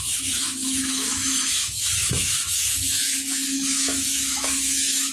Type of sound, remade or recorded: remade